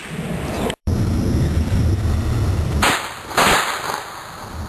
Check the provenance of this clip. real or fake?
fake